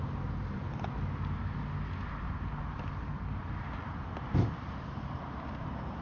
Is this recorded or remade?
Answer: recorded